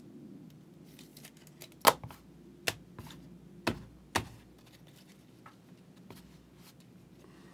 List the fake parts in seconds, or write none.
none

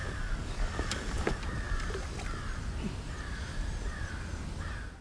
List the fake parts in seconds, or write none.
0.0-1.4 (codec, DAC)

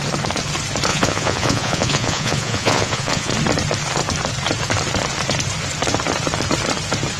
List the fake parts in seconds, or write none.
0.9-3.3 (vocoder, Vocos)

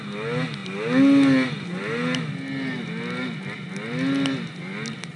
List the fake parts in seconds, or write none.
none

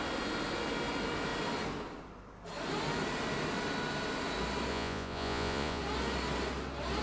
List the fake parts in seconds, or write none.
4.7-5.8 (vocoder, Vocos)

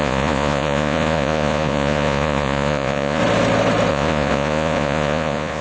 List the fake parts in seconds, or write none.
0.0-3.2 (vocoder, Vocos); 3.9-5.6